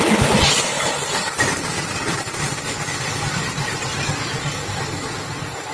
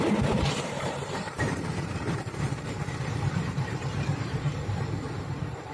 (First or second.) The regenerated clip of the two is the second